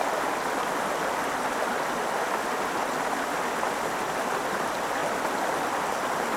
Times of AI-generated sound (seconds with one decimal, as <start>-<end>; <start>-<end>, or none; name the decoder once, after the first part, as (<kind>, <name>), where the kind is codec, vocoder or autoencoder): none